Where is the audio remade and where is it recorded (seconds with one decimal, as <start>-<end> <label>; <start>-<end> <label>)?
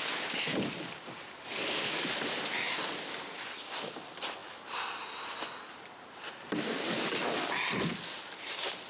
0.0-8.9 recorded